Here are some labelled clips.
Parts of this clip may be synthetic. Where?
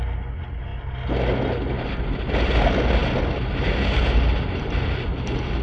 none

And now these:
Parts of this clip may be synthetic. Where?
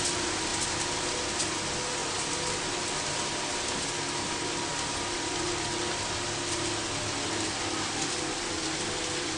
none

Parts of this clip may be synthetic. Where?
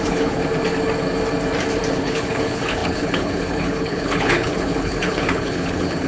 0.0-0.4 (codec, HILCodec); 1.9-6.1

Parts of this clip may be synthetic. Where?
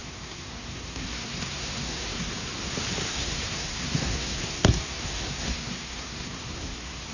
0.0-2.3 (codec, SNAC); 3.1-7.1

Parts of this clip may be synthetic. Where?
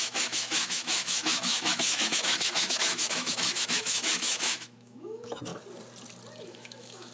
0.0-5.5 (autoencoder, DAC-VAE); 6.4-7.1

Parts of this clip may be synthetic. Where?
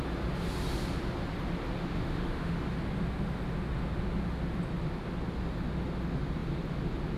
1.8-2.6 (autoencoder, DAC-VAE)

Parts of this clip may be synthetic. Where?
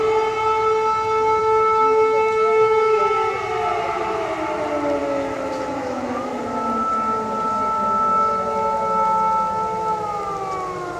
1.4-3.3 (autoencoder, DAC-VAE); 5.0-6.4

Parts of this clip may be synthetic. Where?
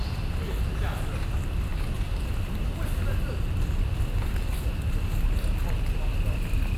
none